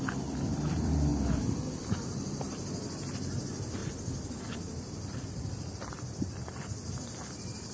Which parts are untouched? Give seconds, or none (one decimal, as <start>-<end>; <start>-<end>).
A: 3.8-4.4